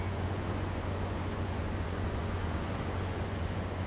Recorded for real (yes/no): no